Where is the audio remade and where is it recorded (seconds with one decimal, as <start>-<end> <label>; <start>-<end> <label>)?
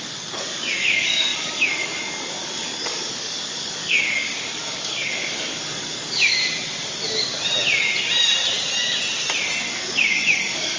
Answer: 0.0-6.4 remade; 6.4-9.6 recorded; 9.6-10.8 remade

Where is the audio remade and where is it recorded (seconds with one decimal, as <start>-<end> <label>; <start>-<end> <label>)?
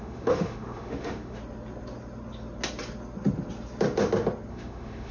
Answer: 0.0-1.4 remade; 1.4-4.5 recorded; 4.5-5.1 remade